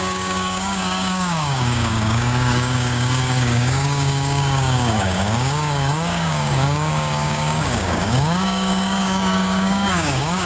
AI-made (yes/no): yes